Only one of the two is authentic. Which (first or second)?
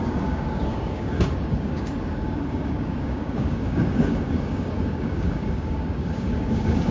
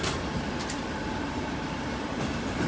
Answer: second